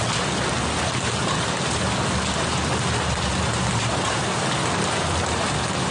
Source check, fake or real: real